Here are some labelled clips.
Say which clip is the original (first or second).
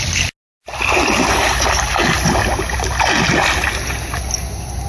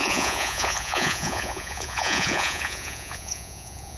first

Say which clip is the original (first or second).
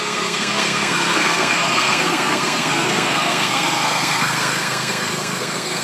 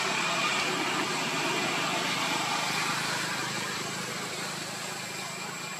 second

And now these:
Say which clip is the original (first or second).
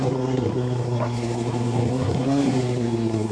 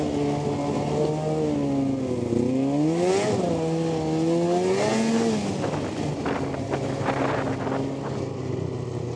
second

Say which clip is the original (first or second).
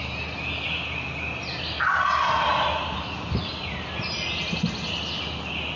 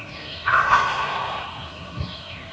first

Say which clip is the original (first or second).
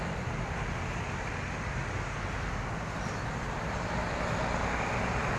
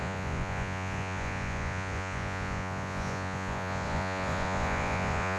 first